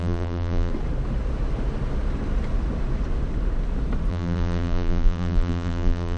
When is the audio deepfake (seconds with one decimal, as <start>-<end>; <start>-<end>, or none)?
0.0-0.7; 4.1-6.2